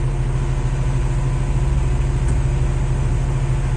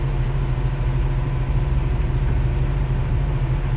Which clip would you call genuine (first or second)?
first